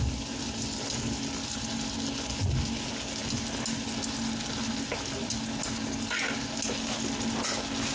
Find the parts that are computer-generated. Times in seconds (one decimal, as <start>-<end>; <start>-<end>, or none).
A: none